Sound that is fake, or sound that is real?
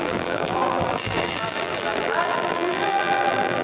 fake